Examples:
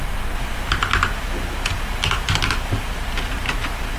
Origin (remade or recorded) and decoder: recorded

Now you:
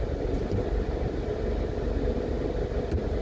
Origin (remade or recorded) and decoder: recorded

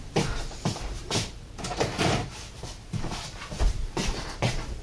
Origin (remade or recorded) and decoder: remade, vocoder, BigVGAN v2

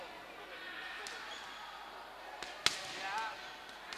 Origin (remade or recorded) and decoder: recorded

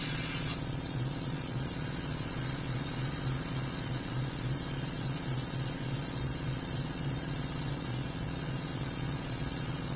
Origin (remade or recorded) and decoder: remade, vocoder, Vocos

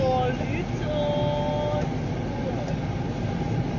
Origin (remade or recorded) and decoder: recorded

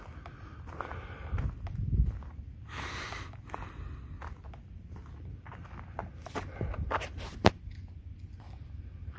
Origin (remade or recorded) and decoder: recorded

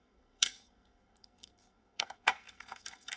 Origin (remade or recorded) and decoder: remade, codec, SNAC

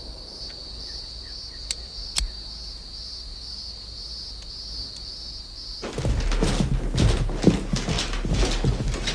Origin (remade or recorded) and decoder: recorded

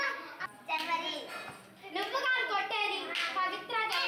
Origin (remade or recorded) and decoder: recorded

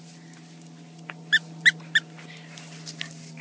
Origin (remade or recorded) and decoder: recorded